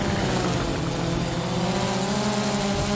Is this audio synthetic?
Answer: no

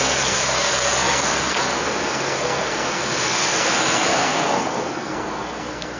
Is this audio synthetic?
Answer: yes